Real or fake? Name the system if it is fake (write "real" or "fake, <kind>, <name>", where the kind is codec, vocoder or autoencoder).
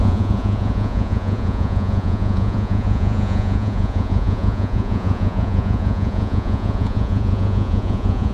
fake, vocoder, Vocos